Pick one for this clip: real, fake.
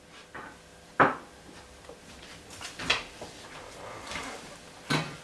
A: real